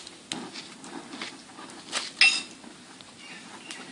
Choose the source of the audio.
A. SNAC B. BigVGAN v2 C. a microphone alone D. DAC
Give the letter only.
C